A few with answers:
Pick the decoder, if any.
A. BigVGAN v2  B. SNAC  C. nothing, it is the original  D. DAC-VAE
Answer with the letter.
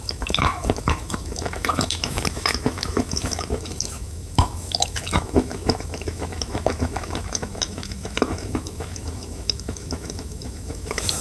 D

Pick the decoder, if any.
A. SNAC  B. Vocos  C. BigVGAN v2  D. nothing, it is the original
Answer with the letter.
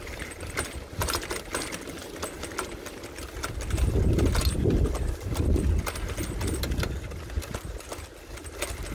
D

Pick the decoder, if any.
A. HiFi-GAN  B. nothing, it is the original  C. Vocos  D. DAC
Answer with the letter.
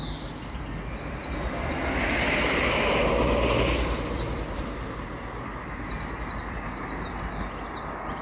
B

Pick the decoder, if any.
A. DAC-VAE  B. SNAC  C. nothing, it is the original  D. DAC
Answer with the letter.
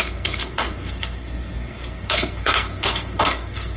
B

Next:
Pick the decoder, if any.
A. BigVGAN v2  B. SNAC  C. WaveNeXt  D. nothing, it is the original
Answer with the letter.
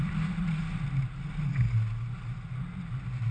D